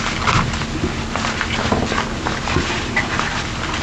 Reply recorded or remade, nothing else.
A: recorded